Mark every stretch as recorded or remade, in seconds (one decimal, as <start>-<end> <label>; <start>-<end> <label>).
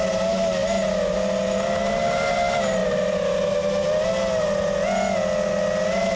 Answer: 0.0-6.2 recorded